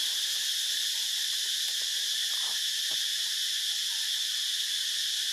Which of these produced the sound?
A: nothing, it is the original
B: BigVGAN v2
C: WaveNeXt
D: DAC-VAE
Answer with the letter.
B